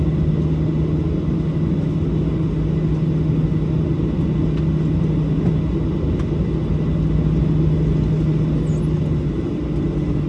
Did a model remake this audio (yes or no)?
no